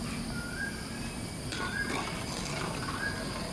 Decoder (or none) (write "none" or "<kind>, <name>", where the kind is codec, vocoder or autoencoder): none